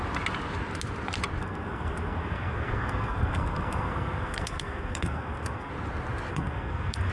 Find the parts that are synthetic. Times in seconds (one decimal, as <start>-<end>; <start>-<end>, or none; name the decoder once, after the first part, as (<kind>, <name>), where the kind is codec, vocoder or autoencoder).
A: 1.4-5.7 (codec, SNAC); 6.3-7.1